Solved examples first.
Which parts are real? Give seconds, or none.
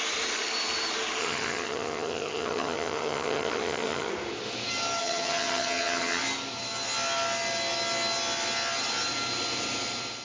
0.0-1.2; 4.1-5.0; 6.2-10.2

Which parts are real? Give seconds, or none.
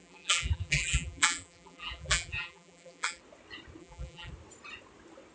3.2-3.8; 4.3-5.3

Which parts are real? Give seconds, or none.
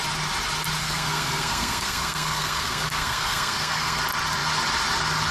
0.0-0.8; 4.0-5.3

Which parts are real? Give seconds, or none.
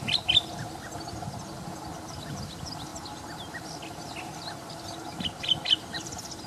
0.0-6.5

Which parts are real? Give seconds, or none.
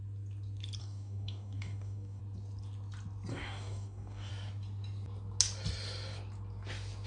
0.0-0.8; 2.2-3.3; 4.3-7.1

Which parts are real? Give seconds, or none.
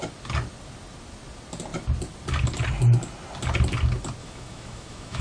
0.0-4.2